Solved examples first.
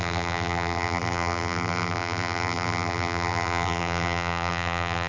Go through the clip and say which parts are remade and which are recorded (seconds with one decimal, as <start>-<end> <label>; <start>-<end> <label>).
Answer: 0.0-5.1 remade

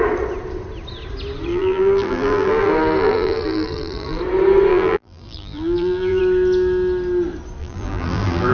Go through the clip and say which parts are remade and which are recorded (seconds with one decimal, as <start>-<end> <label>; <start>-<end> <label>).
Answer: 0.0-1.5 recorded; 1.5-4.2 remade; 4.2-4.7 recorded; 4.7-6.2 remade; 6.2-7.6 recorded; 7.6-8.5 remade

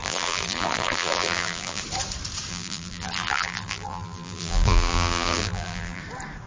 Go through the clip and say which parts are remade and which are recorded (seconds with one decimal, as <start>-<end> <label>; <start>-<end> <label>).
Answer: 0.0-1.8 remade; 1.8-2.5 recorded; 2.5-6.0 remade; 6.0-6.5 recorded